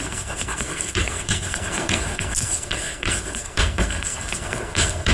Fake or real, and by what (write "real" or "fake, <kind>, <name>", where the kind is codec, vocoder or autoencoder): fake, codec, SNAC